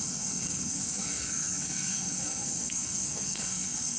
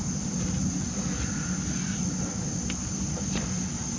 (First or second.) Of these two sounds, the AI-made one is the first